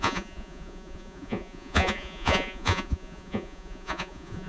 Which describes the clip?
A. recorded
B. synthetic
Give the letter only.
B